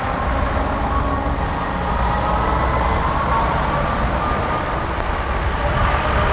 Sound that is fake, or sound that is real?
real